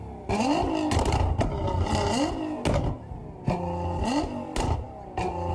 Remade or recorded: recorded